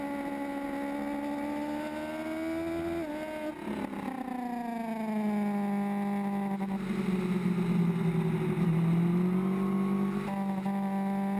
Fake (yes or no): no